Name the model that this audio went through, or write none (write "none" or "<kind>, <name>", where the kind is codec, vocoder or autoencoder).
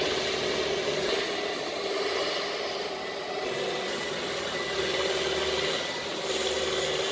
none